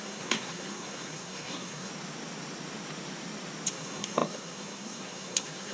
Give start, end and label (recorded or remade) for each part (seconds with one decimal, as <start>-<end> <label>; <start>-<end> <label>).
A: 0.0-1.9 remade; 1.9-3.7 recorded; 3.7-5.7 remade

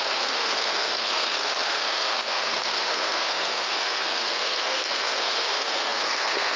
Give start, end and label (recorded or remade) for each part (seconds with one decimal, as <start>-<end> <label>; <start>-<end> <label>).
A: 0.0-6.6 remade

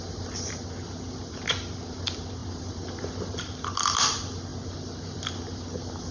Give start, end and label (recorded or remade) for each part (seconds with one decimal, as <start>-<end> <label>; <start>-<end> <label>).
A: 0.0-6.1 recorded

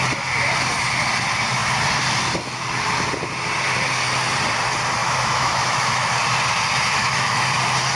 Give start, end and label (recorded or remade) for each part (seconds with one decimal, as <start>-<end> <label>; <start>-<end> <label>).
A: 0.0-5.0 recorded; 5.0-6.1 remade; 6.1-7.0 recorded; 7.0-7.5 remade; 7.5-8.0 recorded

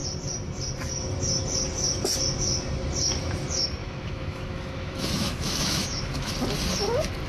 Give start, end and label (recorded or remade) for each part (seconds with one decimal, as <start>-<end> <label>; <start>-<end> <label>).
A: 0.0-3.8 recorded; 3.8-6.3 remade; 6.3-7.3 recorded

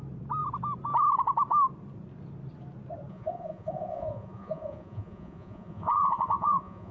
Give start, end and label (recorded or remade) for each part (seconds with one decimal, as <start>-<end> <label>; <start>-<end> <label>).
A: 0.0-3.1 recorded; 3.1-6.9 remade

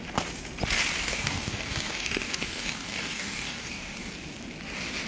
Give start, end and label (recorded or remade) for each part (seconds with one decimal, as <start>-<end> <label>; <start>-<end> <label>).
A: 0.0-1.0 recorded; 1.0-4.1 remade; 4.1-5.1 recorded

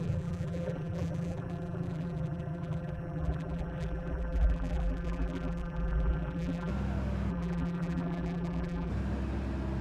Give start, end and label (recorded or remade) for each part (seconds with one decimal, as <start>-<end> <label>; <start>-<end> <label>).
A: 0.0-6.7 remade; 6.7-7.3 recorded; 7.3-8.9 remade; 8.9-9.8 recorded